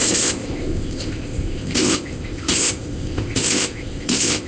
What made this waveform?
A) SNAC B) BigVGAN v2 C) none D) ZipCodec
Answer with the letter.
D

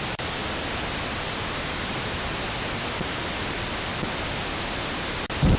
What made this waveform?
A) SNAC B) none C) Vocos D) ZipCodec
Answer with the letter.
B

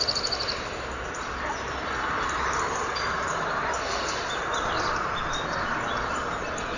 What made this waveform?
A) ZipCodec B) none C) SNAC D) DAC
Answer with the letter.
B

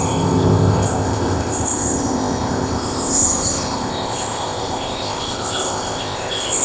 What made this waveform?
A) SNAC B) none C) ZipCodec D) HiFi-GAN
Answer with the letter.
C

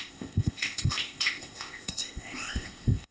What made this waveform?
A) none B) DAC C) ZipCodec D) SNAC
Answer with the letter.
C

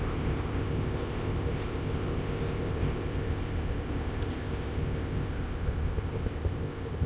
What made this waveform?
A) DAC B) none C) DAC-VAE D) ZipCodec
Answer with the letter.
D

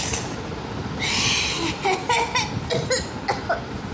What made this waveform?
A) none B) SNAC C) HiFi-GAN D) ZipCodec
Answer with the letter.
A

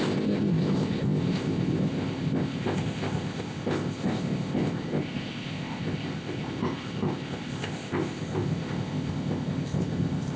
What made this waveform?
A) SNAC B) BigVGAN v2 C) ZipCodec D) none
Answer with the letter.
C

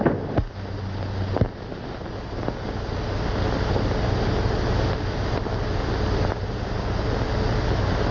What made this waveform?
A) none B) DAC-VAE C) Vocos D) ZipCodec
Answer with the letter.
A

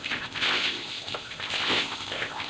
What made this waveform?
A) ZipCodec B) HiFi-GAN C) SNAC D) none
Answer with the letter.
A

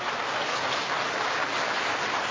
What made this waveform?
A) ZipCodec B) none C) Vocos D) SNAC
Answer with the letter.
B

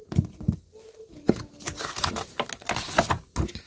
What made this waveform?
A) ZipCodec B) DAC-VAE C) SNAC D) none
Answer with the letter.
D